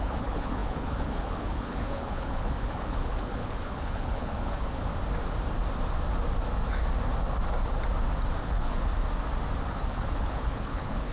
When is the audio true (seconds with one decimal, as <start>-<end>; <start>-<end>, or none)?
4.9-8.4; 8.9-9.9